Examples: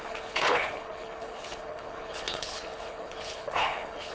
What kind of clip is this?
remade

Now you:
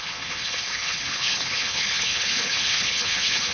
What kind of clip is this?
remade